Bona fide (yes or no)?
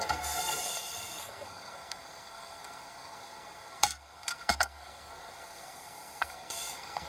no